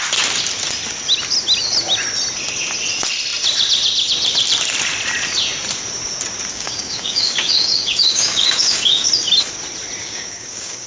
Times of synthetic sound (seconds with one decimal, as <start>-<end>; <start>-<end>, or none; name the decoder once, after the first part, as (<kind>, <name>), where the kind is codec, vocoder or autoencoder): 6.5-9.1 (codec, DAC); 10.0-10.9